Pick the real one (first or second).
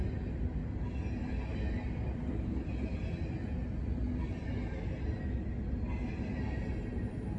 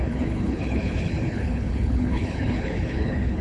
first